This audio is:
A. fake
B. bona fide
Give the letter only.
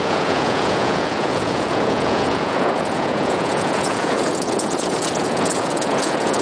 A